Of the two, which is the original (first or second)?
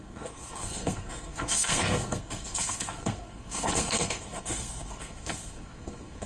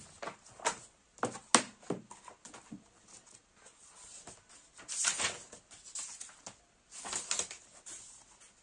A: second